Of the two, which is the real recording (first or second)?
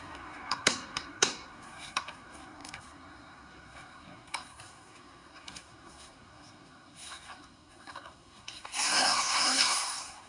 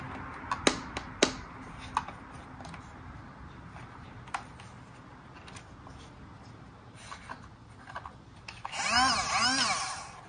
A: second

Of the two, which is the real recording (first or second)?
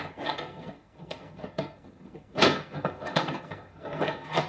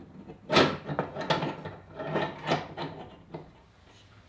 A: second